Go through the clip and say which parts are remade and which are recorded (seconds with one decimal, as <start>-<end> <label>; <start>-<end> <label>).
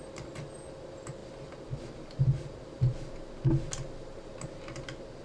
0.0-5.2 recorded